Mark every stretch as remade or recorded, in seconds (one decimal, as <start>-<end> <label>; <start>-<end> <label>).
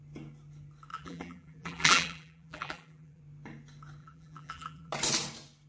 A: 0.0-0.9 recorded; 0.9-3.2 remade; 3.2-4.0 recorded; 4.0-4.9 remade; 4.9-5.7 recorded